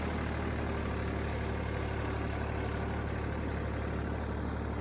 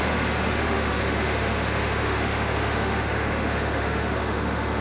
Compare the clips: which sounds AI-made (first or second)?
second